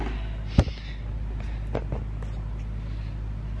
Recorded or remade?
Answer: recorded